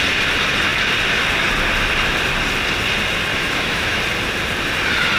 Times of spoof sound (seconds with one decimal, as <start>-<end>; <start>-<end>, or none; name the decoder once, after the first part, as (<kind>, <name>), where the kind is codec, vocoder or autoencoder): 3.3-4.0 (autoencoder, DAC-VAE)